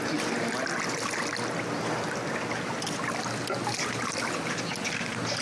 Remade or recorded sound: recorded